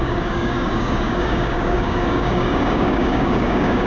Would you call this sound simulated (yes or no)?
yes